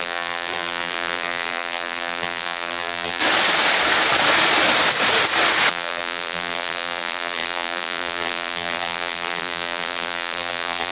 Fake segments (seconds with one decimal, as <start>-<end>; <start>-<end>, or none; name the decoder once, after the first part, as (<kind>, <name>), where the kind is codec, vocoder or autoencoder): 0.0-3.2 (vocoder, BigVGAN v2); 5.7-10.9